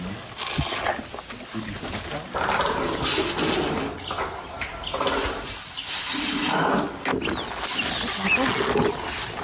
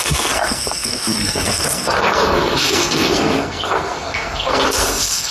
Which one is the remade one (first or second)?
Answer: second